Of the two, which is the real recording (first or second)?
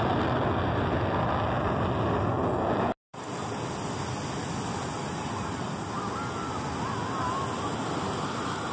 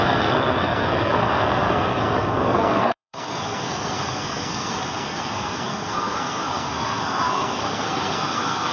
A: first